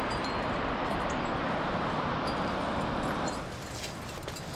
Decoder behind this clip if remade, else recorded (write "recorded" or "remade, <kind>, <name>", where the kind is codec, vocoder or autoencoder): recorded